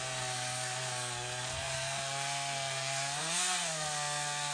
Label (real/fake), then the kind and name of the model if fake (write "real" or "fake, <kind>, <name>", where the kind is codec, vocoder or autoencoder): fake, codec, SNAC